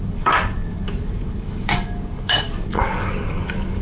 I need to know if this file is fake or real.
fake